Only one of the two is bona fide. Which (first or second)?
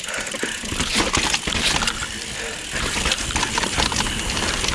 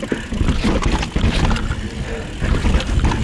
second